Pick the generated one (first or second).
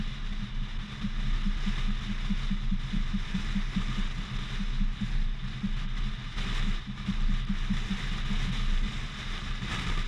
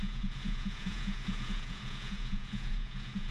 second